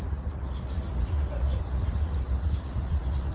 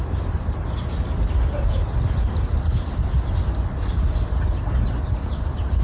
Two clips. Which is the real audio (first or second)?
second